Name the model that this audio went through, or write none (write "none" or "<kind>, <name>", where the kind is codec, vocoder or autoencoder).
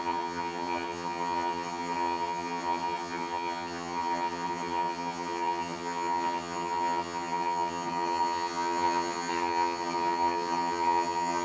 vocoder, HiFi-GAN